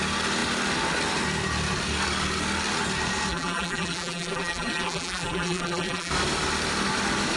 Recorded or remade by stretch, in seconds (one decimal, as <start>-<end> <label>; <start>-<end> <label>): 0.0-3.3 recorded; 3.3-6.1 remade; 6.1-7.4 recorded